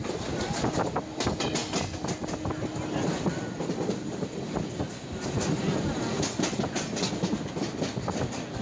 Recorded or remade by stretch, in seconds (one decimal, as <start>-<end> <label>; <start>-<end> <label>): 0.0-8.6 recorded